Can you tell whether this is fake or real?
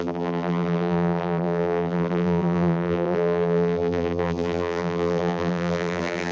fake